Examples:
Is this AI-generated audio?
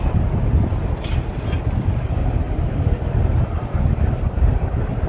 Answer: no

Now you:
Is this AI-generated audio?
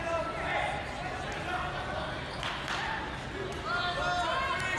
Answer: no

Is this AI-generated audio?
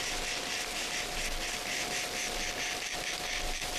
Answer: no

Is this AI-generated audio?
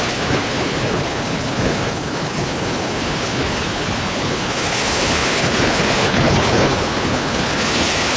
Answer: yes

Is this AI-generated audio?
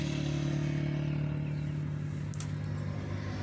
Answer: no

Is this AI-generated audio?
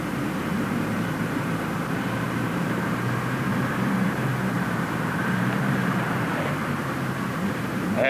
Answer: yes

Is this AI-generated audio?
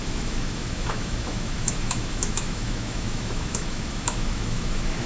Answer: yes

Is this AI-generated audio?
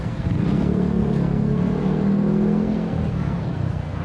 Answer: yes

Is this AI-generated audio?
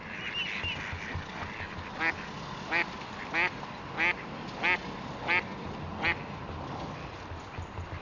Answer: no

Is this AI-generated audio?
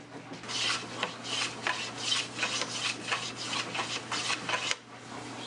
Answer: no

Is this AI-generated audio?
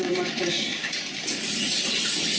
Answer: no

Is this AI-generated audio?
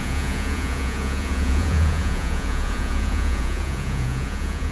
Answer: yes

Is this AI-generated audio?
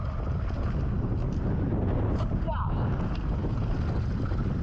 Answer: no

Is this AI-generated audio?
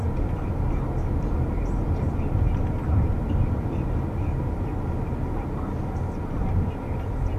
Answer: no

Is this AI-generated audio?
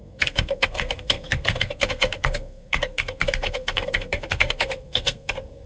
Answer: yes